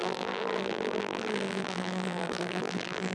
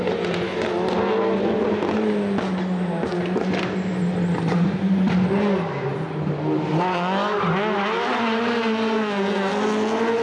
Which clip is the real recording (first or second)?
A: second